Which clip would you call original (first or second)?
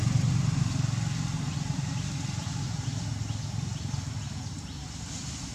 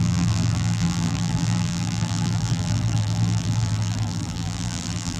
first